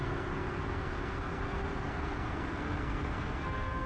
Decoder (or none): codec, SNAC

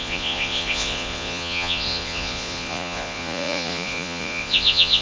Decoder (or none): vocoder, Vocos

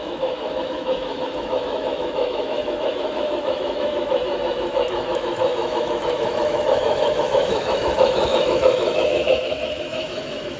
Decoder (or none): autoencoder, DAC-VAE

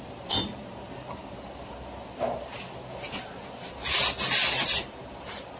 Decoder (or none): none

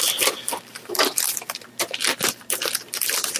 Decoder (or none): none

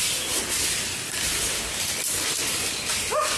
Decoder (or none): none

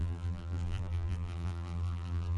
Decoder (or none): vocoder, BigVGAN v2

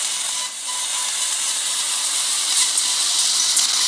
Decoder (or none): none